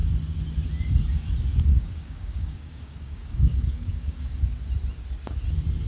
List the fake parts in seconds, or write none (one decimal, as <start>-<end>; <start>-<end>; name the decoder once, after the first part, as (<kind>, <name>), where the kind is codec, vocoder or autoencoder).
1.7-4.4 (codec, DAC)